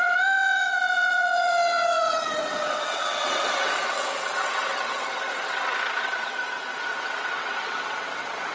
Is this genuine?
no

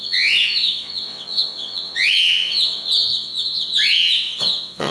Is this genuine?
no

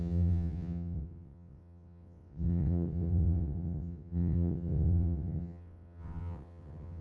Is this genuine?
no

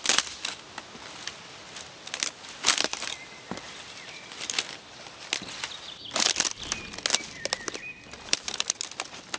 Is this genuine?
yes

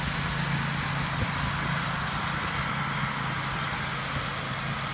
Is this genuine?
yes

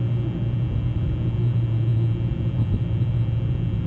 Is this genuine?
yes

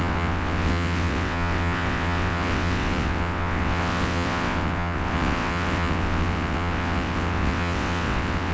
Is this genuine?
no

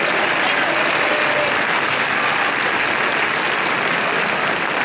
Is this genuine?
yes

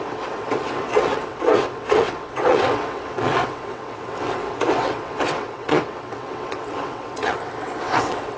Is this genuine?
no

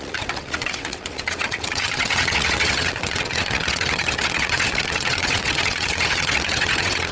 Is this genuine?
no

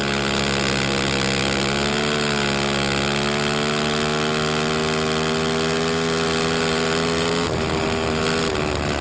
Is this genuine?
yes